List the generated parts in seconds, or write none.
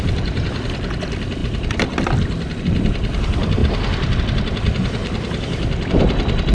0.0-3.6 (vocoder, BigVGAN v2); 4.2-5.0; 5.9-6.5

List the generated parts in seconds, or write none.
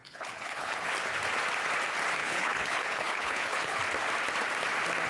0.0-0.9 (codec, HILCodec); 2.2-3.8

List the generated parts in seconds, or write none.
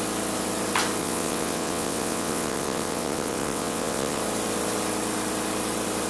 1.0-4.2 (vocoder, WaveNeXt)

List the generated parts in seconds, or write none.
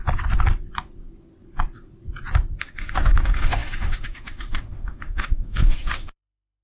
2.6-6.6 (autoencoder, DAC-VAE)